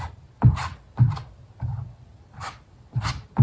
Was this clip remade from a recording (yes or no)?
no